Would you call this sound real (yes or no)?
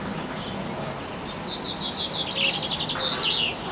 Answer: yes